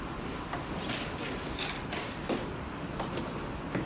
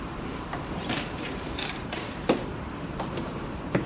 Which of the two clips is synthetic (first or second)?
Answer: second